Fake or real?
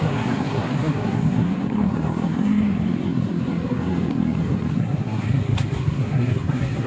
fake